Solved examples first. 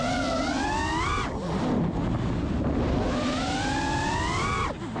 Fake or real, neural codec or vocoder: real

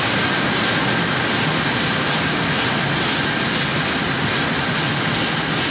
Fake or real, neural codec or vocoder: real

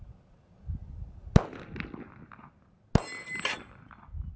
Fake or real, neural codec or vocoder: real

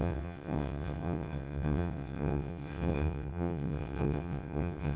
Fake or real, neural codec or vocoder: fake, vocoder, WaveNeXt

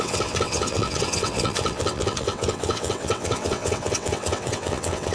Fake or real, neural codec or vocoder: fake, vocoder, WaveNeXt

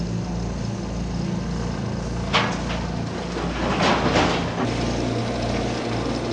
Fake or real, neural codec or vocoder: real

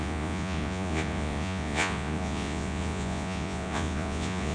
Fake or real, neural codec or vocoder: fake, vocoder, Vocos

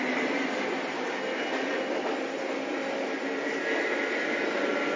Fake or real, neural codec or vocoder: real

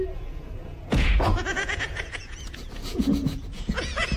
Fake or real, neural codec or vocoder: fake, vocoder, Vocos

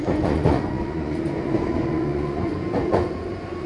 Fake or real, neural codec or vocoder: fake, vocoder, Vocos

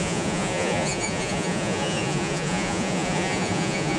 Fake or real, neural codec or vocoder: fake, vocoder, Vocos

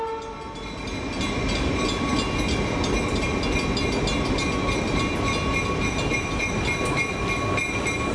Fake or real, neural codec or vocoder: real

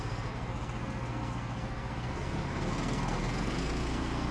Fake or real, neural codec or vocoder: fake, codec, SNAC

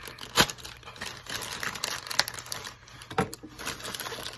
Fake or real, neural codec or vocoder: real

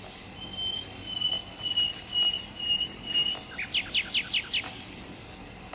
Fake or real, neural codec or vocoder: real